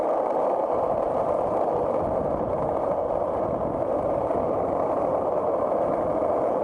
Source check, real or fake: real